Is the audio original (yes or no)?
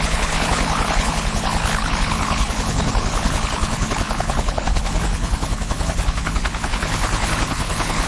no